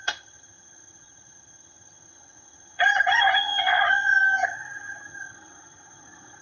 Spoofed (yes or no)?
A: yes